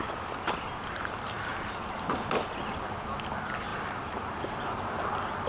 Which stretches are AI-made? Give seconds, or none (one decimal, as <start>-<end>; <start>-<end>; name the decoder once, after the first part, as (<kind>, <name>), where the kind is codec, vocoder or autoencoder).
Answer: none